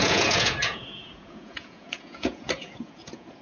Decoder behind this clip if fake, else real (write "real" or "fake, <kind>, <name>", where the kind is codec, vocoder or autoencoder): fake, vocoder, Vocos